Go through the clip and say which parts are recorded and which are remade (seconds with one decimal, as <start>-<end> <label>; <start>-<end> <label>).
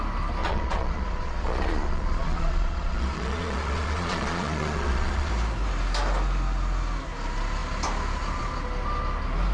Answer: 0.0-0.4 recorded; 0.4-5.3 remade; 5.3-9.5 recorded